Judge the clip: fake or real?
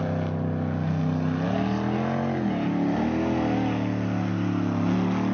real